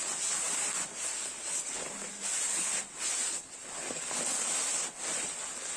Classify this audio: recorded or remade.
recorded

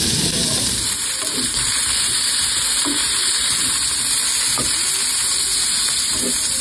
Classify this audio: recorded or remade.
remade